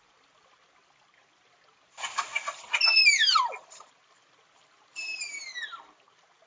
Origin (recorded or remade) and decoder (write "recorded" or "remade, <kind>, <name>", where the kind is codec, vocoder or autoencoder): recorded